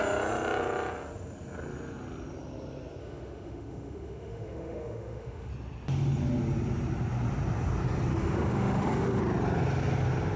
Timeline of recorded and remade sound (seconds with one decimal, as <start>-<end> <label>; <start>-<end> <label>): 0.0-3.0 recorded; 3.0-5.5 remade; 5.5-8.1 recorded; 8.1-9.2 remade; 9.2-10.4 recorded